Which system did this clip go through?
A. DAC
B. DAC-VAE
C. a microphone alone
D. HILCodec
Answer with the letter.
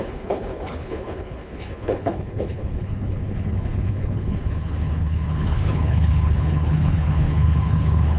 D